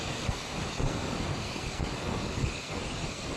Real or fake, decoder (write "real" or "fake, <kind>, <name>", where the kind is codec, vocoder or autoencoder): fake, codec, SNAC